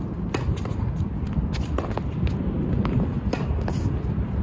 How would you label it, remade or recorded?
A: recorded